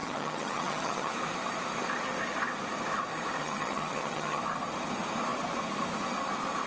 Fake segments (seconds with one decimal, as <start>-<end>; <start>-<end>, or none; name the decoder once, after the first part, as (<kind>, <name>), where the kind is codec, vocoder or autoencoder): 0.0-1.1 (vocoder, HiFi-GAN); 3.4-4.4